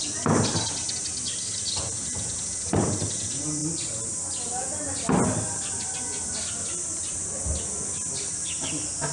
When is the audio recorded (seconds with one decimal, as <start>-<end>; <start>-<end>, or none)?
0.0-9.1